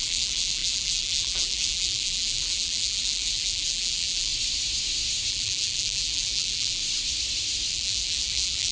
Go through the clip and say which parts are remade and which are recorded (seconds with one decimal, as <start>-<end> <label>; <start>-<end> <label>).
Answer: 0.0-4.3 remade; 4.3-5.3 recorded; 5.3-6.8 remade; 6.8-7.7 recorded; 7.7-8.7 remade